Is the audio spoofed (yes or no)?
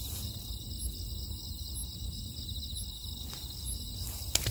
no